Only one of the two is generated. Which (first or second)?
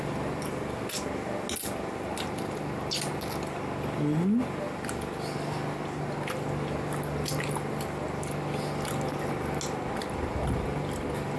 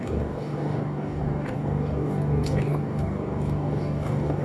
second